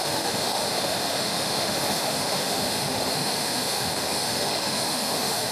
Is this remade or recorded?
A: remade